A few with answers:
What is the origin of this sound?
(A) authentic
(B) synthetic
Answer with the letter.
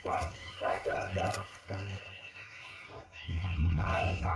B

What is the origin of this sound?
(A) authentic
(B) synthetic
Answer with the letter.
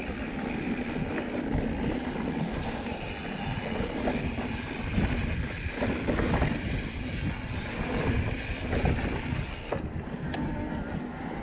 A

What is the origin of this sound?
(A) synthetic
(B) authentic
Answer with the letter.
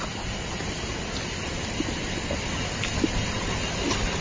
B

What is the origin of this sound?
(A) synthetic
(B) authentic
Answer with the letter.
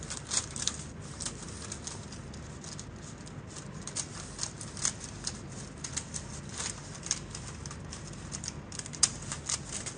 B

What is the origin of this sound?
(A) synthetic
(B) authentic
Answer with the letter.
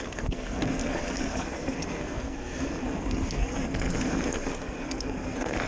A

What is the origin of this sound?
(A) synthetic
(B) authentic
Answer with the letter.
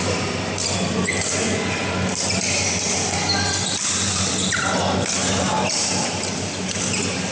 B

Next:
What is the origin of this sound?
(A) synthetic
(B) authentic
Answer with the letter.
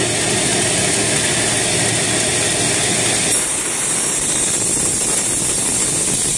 B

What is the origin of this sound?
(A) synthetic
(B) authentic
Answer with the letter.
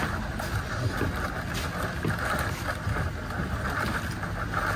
B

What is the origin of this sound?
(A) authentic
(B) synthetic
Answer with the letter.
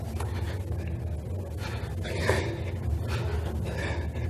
A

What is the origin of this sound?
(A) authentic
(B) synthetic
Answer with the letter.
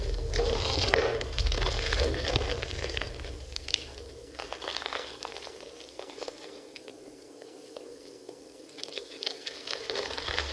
B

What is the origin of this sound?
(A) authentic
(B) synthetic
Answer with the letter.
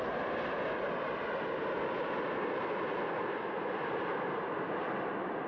A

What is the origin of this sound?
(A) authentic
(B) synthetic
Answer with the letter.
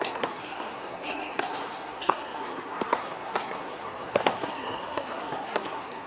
B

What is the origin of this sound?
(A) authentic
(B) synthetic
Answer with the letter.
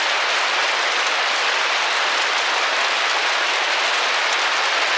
A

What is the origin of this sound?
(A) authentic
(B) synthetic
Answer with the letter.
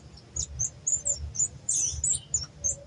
A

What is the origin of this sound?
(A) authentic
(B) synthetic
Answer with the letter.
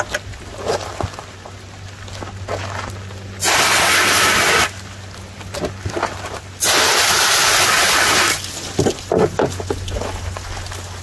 A